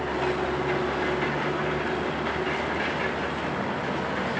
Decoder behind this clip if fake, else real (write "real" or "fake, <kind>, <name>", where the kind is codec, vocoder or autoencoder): real